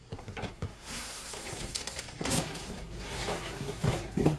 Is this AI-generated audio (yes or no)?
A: yes